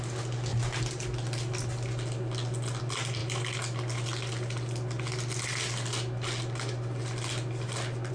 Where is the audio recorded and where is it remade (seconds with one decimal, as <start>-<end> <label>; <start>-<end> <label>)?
0.0-8.1 recorded